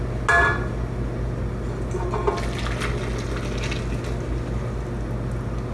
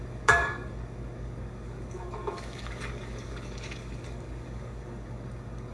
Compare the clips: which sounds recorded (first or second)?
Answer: first